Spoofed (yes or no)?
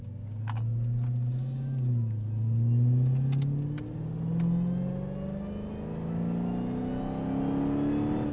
no